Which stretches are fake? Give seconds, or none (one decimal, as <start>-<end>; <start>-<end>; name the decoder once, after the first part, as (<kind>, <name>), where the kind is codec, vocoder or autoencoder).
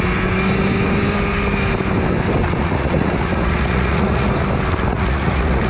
2.6-4.3 (vocoder, Vocos); 4.9-5.7